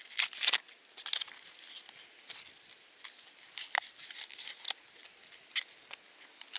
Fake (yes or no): no